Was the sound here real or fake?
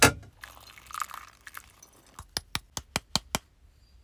real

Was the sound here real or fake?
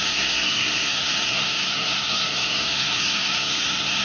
fake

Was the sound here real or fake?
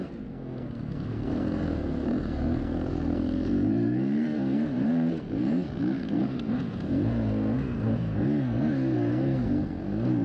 fake